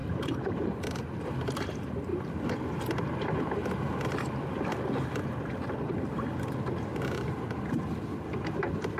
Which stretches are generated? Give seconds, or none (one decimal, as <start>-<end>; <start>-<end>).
none